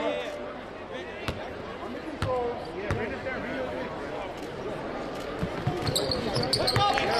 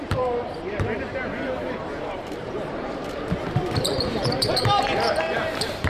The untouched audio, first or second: first